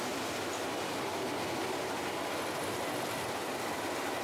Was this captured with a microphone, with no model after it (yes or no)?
yes